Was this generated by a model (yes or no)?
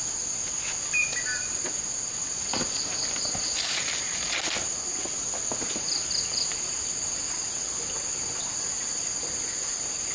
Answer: no